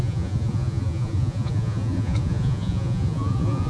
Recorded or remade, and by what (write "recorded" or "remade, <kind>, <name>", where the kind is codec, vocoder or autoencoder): remade, vocoder, Vocos